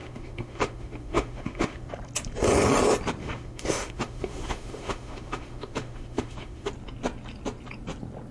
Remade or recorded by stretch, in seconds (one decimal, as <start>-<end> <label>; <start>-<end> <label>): 0.0-1.9 remade; 1.9-3.2 recorded; 3.2-6.7 remade; 6.7-8.3 recorded